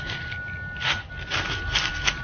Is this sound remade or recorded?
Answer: recorded